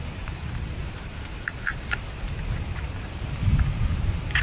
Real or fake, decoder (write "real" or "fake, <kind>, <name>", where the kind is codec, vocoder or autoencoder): fake, vocoder, BigVGAN v2